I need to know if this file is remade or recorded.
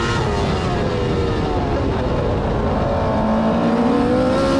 recorded